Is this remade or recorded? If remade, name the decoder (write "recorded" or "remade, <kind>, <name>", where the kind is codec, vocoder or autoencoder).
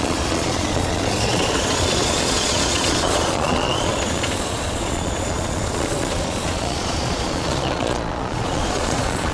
remade, vocoder, Vocos